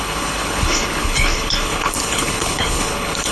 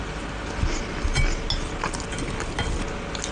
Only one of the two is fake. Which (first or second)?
first